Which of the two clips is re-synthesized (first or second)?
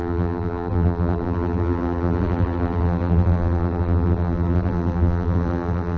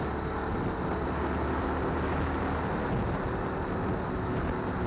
first